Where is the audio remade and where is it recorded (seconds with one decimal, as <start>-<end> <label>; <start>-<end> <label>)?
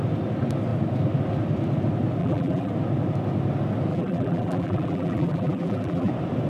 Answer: 0.0-2.2 recorded; 2.2-2.7 remade; 2.7-3.9 recorded; 3.9-6.1 remade; 6.1-6.5 recorded